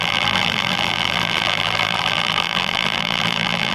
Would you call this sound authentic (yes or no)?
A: no